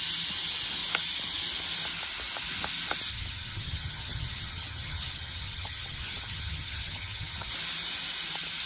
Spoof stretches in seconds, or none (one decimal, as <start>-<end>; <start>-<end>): 3.1-7.5